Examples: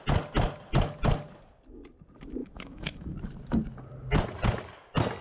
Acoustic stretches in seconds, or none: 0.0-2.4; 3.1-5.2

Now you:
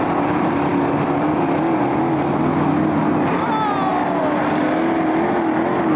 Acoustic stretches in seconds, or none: 0.0-6.0

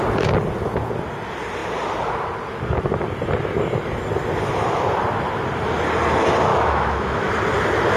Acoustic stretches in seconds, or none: 0.0-6.5; 7.3-8.0